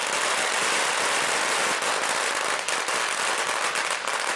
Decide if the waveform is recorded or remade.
recorded